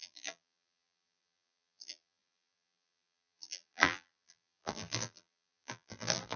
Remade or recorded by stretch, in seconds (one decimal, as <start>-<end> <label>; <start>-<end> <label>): 0.0-6.4 remade